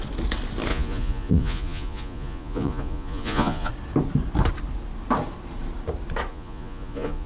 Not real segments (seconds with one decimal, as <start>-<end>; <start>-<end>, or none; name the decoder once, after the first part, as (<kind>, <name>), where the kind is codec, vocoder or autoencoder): 0.7-3.7 (vocoder, Vocos); 6.3-7.3